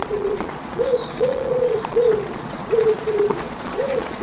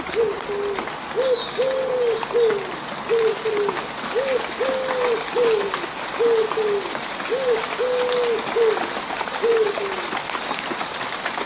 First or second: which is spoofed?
first